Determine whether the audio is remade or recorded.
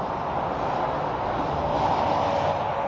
recorded